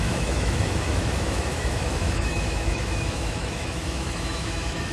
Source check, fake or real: fake